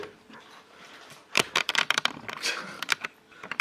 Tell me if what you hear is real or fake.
fake